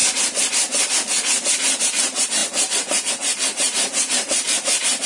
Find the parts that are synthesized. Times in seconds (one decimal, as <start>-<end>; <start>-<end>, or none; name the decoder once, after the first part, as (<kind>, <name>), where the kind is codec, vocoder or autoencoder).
1.8-5.1 (vocoder, BigVGAN v2)